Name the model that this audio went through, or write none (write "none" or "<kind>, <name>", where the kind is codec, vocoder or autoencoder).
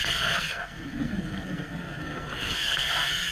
codec, SNAC